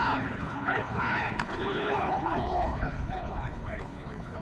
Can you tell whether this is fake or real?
fake